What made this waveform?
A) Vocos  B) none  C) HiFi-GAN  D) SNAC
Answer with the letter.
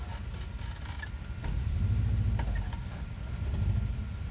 B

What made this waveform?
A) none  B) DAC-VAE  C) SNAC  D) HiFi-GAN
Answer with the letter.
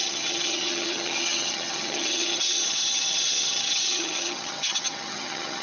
D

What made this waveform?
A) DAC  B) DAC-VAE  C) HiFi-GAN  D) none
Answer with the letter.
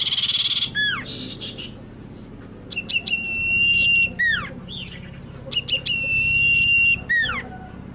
D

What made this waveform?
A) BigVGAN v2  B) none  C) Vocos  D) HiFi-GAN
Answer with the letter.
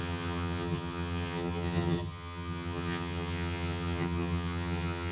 D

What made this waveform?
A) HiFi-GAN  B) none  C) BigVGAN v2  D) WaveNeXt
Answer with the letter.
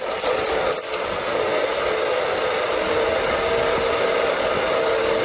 B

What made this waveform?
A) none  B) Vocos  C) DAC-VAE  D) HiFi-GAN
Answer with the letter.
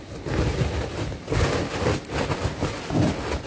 A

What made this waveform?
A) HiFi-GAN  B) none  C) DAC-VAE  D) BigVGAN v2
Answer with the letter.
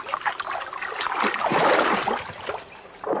B